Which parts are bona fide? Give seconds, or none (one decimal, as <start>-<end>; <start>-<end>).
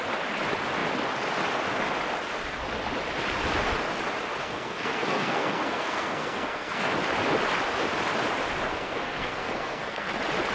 0.0-4.4; 6.9-8.7; 10.1-10.5